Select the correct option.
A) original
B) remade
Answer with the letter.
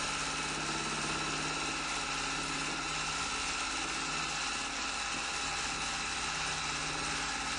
A